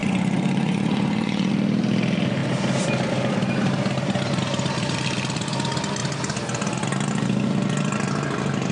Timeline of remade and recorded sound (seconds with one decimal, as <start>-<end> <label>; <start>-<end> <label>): 0.0-1.5 remade; 1.5-8.7 recorded